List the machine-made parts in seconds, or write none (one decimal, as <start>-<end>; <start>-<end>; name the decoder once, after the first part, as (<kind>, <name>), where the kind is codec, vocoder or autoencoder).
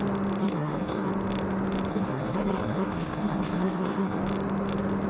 0.4-1.1 (codec, SNAC); 1.9-4.2